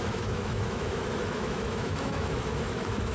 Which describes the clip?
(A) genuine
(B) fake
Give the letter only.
B